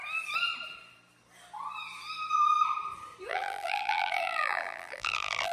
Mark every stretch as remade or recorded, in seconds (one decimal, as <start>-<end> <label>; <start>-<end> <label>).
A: 0.0-3.3 recorded; 3.3-5.5 remade